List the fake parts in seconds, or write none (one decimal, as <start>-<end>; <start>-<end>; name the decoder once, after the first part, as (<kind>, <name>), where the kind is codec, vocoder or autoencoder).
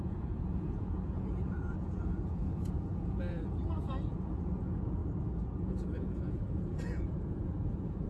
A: 0.0-5.0 (vocoder, Vocos); 5.6-8.1